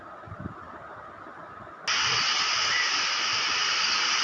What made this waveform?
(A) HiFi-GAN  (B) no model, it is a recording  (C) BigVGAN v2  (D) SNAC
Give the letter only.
B